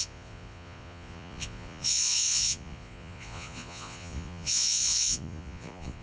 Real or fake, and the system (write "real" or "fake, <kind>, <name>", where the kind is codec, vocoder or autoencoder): fake, vocoder, Vocos